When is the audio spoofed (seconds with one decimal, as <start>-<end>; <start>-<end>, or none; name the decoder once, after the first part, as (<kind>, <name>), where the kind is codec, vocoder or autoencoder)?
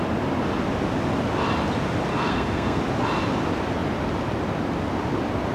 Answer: 2.1-2.8 (codec, SNAC)